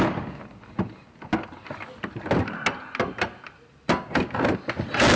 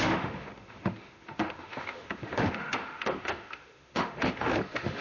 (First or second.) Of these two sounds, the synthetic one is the second